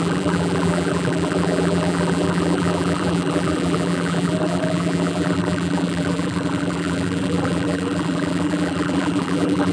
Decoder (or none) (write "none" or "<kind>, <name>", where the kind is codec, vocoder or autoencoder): vocoder, BigVGAN v2